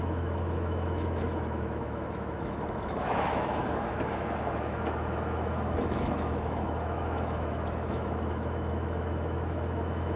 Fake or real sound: fake